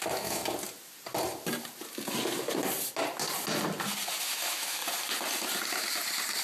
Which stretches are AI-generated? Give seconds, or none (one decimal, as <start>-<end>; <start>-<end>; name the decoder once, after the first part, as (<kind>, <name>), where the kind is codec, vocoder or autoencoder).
0.0-0.4 (autoencoder, DAC-VAE); 4.2-4.8